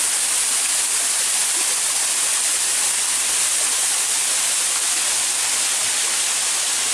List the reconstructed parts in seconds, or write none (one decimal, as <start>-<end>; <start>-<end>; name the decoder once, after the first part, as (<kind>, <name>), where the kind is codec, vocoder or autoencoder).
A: none